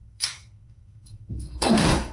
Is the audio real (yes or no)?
no